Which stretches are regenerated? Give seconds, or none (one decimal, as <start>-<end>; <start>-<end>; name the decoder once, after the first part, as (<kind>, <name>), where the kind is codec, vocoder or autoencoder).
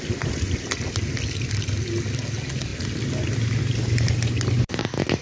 none